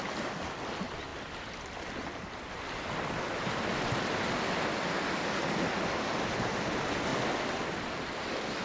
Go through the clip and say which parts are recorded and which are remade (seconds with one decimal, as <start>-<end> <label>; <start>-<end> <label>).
0.0-8.6 recorded